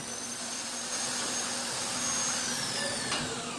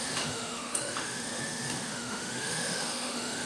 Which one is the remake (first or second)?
second